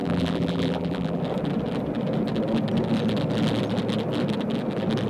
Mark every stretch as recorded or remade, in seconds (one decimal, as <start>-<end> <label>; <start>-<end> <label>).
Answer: 0.0-1.2 remade; 1.2-5.1 recorded